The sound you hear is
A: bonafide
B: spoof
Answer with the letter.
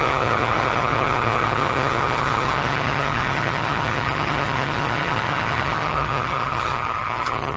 B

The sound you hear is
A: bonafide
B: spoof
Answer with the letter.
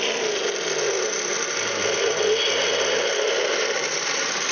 A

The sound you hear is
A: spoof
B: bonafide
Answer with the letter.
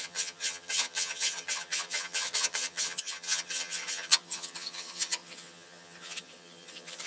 A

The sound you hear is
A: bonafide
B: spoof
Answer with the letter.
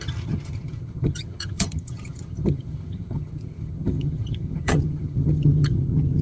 B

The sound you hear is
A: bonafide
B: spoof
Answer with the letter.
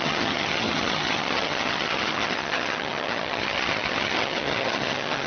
B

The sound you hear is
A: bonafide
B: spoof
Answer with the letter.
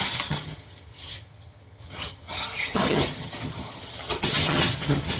B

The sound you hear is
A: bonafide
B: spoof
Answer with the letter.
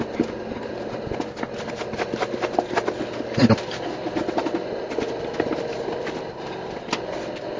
A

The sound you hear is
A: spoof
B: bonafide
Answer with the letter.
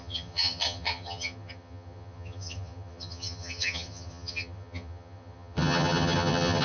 A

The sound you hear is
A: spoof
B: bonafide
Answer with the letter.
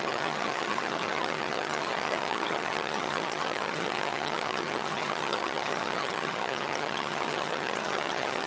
A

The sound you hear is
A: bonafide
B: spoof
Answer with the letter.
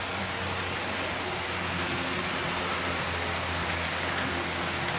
A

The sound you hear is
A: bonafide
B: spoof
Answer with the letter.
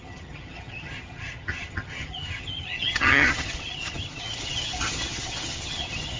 B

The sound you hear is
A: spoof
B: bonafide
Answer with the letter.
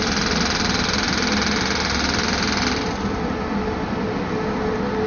B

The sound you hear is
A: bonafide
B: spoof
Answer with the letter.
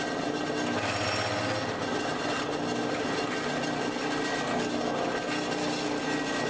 A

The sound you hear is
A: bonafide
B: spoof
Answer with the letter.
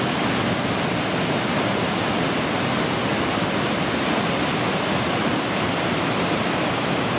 A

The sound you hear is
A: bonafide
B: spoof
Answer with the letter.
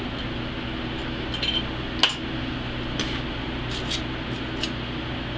A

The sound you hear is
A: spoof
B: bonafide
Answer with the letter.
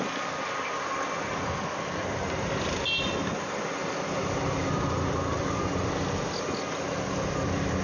B